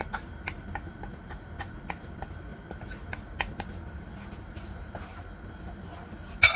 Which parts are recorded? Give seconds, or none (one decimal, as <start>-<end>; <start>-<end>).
0.0-6.6